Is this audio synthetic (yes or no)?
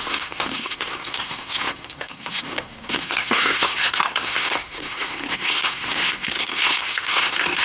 yes